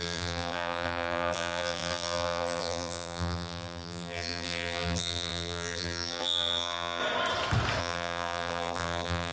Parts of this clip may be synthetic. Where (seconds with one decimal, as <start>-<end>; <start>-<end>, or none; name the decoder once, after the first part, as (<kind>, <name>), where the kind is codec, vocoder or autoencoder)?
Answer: 0.0-7.0 (vocoder, BigVGAN v2); 7.8-9.3